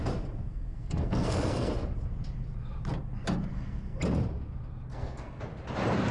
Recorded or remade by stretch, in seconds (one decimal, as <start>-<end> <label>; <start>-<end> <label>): 0.0-0.5 recorded; 0.5-1.7 remade; 1.7-3.5 recorded; 3.5-4.0 remade; 4.0-4.9 recorded; 4.9-5.4 remade; 5.4-6.1 recorded